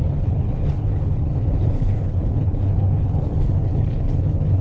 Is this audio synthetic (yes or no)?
yes